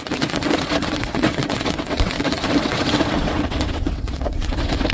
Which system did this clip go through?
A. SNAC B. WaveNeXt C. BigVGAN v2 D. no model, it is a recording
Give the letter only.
B